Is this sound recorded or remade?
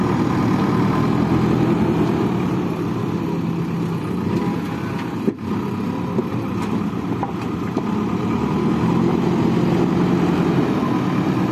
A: recorded